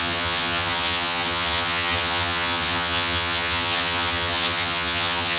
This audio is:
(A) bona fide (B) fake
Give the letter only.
B